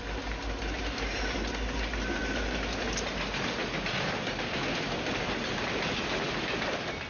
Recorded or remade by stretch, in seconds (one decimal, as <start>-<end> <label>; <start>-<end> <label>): 0.0-7.1 recorded